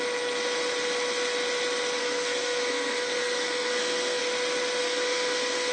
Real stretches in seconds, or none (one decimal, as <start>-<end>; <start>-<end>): 0.0-2.0; 4.2-4.8